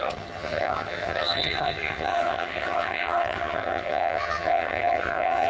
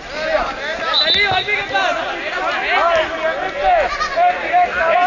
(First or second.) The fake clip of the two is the first